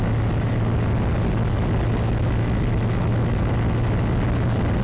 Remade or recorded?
recorded